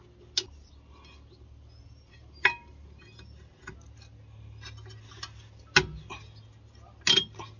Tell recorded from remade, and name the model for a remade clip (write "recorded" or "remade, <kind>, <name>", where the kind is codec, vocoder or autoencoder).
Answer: recorded